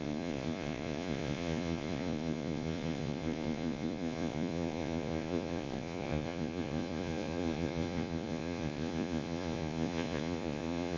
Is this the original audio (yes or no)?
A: no